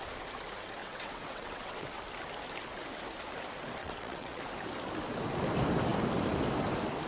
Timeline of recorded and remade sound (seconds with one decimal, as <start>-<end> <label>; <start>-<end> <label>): 0.0-0.8 recorded; 0.8-2.0 remade; 2.0-3.8 recorded; 3.8-4.4 remade; 4.4-7.1 recorded